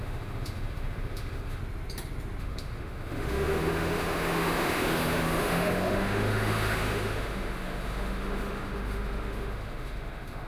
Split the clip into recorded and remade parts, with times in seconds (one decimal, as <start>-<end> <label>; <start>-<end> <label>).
0.0-1.6 remade; 1.6-2.4 recorded; 2.4-10.5 remade